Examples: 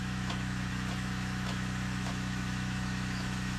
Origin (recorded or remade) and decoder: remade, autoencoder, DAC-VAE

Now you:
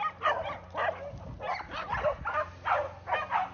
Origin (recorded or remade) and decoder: recorded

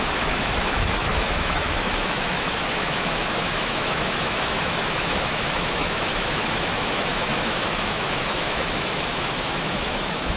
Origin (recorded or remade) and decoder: remade, autoencoder, DAC-VAE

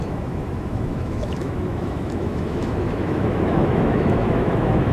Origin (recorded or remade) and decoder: remade, autoencoder, DAC-VAE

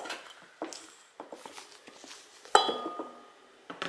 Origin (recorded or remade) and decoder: recorded